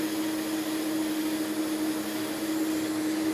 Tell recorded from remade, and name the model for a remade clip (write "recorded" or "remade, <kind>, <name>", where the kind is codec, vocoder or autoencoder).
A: recorded